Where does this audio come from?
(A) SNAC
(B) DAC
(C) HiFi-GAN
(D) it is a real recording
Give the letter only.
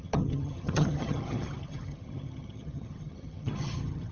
C